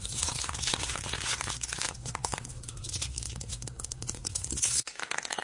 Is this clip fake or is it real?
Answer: fake